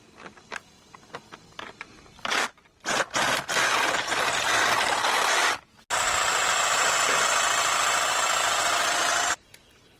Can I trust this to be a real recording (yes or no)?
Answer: yes